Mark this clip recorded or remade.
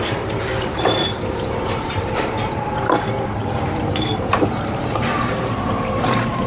remade